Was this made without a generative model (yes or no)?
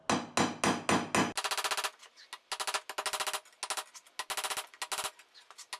yes